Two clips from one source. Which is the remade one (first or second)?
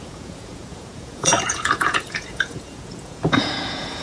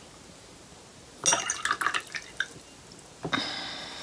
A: first